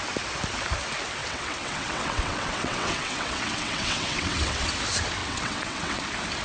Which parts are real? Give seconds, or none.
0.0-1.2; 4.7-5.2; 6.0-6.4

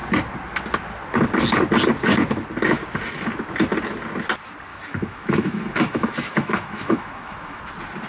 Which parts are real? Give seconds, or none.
0.0-4.7; 7.6-8.1